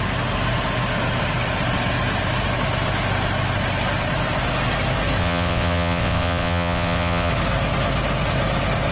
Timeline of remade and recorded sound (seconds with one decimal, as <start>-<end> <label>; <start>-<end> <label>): 0.0-5.2 recorded; 5.2-7.3 remade; 7.3-8.9 recorded

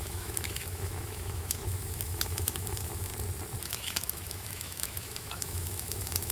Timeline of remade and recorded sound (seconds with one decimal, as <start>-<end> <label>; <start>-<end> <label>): 0.0-3.1 remade; 3.1-3.6 recorded; 3.6-6.3 remade

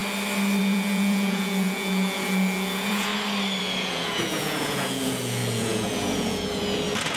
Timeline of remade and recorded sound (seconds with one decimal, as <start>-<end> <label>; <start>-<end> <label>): 0.0-0.6 recorded; 0.6-3.1 remade; 3.1-3.6 recorded; 3.6-7.2 remade